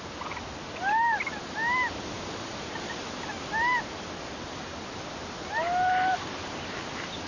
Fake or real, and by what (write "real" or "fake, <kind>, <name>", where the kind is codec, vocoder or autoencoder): real